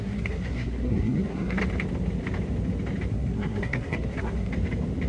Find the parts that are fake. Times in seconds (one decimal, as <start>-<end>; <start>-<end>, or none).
0.0-1.6; 3.1-4.5